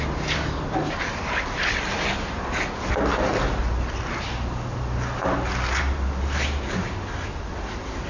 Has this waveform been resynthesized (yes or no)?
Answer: no